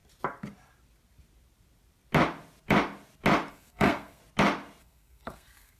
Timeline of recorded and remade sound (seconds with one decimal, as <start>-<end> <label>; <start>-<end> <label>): 0.0-3.5 recorded; 3.5-4.2 remade; 4.2-4.8 recorded; 4.8-5.8 remade